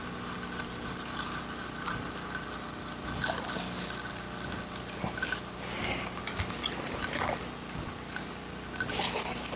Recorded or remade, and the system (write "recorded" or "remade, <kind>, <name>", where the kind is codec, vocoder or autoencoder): recorded